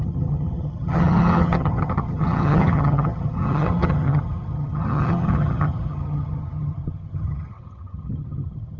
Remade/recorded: remade